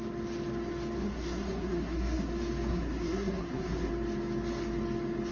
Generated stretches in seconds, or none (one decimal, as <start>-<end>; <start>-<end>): 1.0-2.3; 2.7-3.9